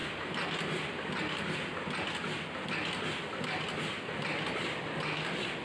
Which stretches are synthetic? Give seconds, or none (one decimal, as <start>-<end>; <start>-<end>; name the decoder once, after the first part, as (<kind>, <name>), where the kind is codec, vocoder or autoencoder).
none